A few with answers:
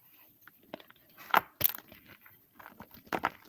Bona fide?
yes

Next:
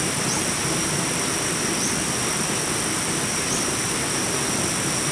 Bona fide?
yes